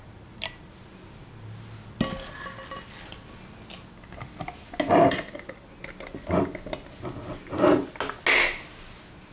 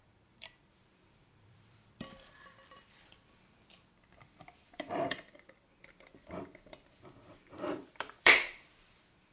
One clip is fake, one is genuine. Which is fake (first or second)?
second